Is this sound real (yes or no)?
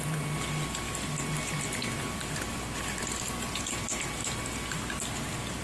yes